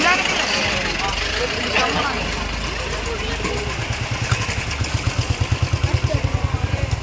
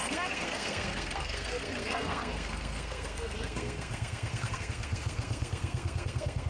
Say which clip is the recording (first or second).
first